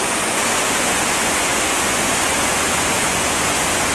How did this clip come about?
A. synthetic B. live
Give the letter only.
A